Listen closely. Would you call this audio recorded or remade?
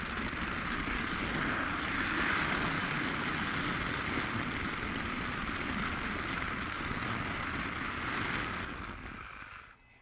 recorded